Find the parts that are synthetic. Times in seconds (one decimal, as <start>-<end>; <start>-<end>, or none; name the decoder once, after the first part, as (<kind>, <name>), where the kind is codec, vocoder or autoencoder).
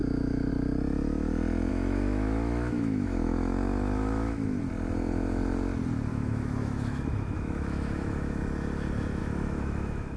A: 0.0-0.5 (autoencoder, DAC-VAE); 1.7-4.6; 6.1-8.4; 9.2-10.2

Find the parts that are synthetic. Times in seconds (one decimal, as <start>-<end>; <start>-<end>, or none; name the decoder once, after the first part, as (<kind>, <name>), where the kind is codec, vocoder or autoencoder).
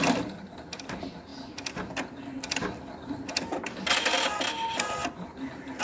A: none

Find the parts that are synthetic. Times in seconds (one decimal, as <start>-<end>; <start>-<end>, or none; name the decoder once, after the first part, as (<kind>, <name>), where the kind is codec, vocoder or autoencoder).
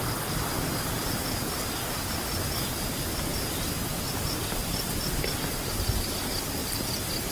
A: 3.3-4.1 (vocoder, BigVGAN v2); 6.6-7.3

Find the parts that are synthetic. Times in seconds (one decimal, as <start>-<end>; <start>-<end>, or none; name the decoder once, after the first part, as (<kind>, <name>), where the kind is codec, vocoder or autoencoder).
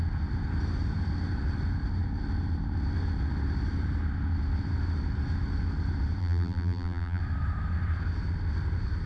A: 6.2-7.2 (vocoder, BigVGAN v2)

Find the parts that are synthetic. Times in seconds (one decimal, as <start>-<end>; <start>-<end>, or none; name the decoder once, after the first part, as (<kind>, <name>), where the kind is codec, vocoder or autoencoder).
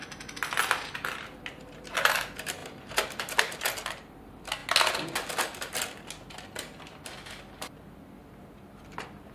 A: 0.0-2.6 (vocoder, BigVGAN v2); 3.2-4.6; 7.7-8.2; 8.8-9.3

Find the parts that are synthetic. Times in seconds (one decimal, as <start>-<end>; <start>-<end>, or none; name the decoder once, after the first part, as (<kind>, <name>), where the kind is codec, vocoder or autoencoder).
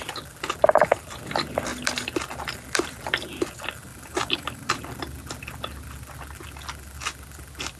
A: 3.9-4.8 (vocoder, BigVGAN v2)